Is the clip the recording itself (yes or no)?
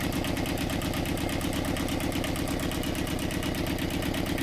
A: yes